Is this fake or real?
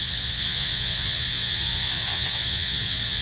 fake